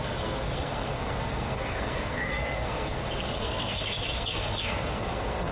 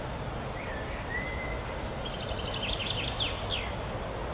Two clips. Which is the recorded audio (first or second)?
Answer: second